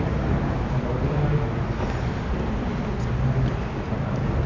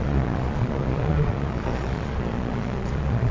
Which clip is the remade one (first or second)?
second